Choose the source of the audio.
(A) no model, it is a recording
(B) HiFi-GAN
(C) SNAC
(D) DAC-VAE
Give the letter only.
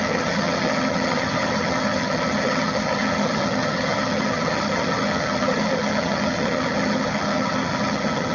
B